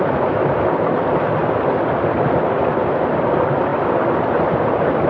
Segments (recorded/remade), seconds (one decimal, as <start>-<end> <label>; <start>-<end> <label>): 0.0-5.1 recorded